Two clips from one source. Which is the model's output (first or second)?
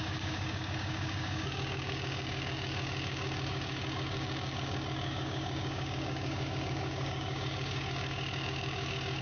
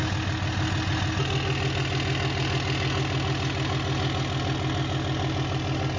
first